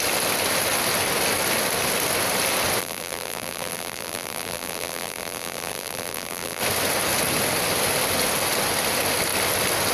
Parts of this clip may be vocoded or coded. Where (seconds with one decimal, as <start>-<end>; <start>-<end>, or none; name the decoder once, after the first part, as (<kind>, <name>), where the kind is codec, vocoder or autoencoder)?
2.8-6.6 (vocoder, BigVGAN v2)